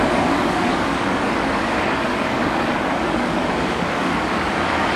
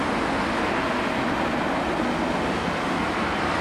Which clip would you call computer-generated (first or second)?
first